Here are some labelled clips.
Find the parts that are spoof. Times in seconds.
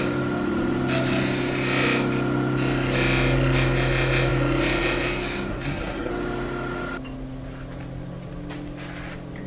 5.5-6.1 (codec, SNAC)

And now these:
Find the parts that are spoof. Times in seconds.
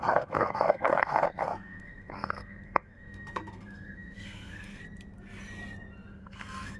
0.0-4.8 (codec, SNAC); 6.2-6.8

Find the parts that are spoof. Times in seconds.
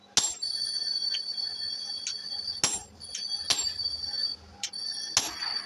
none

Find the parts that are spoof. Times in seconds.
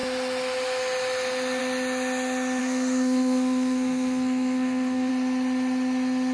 2.6-5.1 (codec, SNAC)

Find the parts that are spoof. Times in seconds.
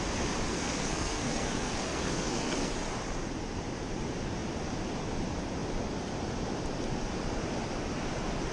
0.5-2.7 (codec, SNAC)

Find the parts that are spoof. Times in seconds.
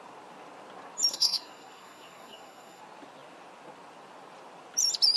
1.1-2.8 (codec, SNAC)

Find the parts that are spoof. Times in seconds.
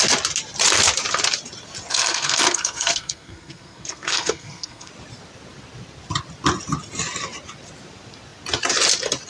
1.9-4.9 (codec, SNAC)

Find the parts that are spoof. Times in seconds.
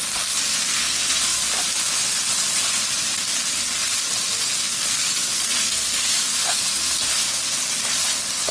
0.7-1.5 (codec, SNAC); 4.6-7.0